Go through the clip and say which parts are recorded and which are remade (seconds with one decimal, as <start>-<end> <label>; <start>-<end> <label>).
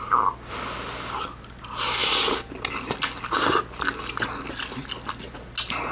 0.0-5.9 recorded